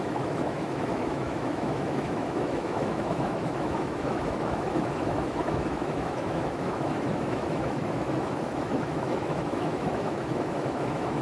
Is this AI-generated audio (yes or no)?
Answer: yes